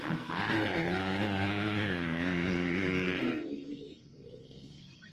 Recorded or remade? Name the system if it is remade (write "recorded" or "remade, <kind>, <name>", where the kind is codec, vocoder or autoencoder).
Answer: remade, codec, SNAC